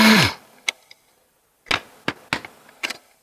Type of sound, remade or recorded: recorded